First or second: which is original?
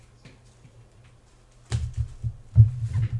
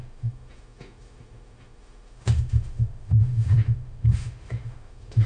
first